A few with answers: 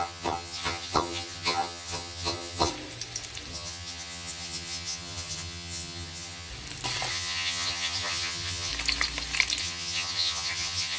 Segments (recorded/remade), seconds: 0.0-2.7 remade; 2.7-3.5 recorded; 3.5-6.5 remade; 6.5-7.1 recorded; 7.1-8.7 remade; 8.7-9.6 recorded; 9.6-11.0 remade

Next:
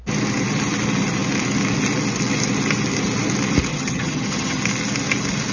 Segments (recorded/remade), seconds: 0.0-3.7 recorded; 3.7-4.6 remade; 4.6-5.5 recorded